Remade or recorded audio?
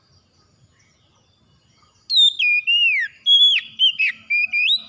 recorded